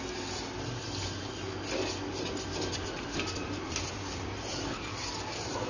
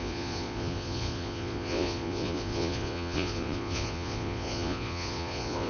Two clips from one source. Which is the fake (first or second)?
second